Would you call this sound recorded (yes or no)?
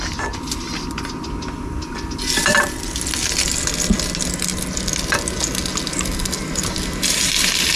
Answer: yes